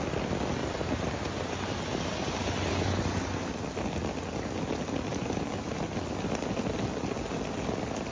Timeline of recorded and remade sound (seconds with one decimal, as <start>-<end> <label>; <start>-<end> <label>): 0.0-0.6 recorded; 0.6-1.8 remade; 1.8-5.1 recorded; 5.1-5.6 remade; 5.6-8.1 recorded